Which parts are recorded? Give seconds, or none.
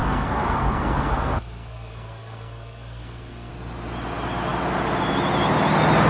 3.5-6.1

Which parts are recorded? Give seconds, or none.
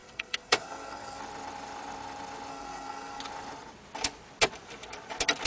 1.2-2.5; 3.2-5.5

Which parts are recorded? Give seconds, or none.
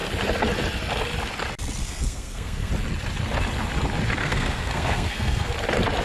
0.0-1.8; 2.7-4.2; 5.5-6.0